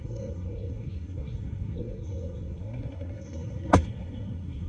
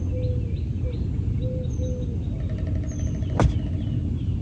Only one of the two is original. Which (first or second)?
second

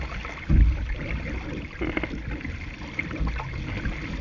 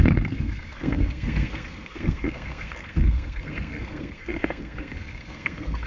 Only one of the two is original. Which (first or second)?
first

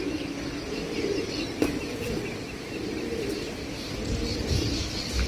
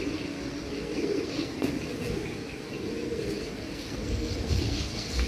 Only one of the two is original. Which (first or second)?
first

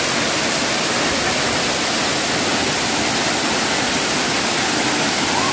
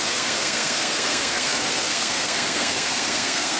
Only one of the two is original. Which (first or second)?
first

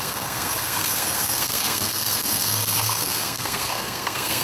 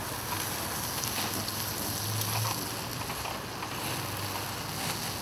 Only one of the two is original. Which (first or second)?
second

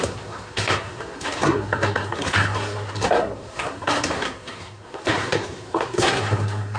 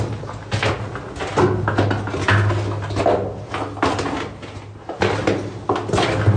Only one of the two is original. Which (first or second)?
second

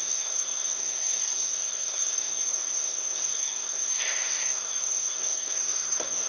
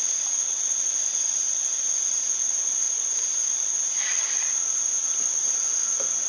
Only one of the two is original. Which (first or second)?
second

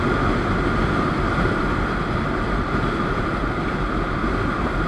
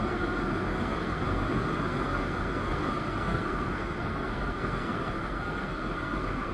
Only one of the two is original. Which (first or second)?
first